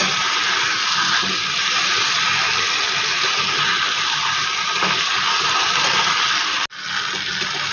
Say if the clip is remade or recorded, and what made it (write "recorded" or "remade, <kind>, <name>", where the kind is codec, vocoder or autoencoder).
recorded